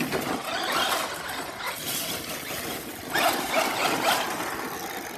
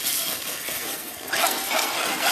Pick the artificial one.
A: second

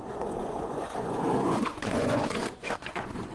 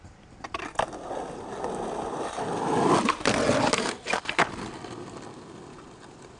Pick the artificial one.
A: first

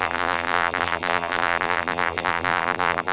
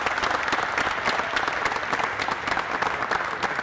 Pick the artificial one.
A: first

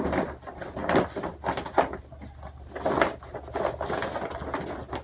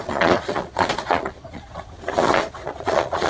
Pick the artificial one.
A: second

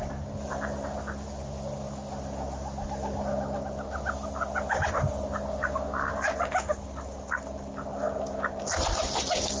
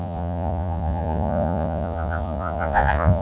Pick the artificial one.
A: second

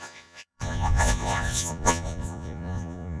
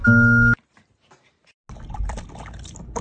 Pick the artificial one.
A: first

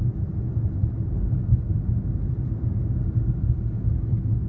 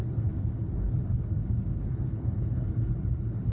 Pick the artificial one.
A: second